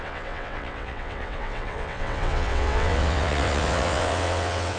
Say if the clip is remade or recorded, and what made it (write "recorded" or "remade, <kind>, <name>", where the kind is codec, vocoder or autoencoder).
remade, vocoder, WaveNeXt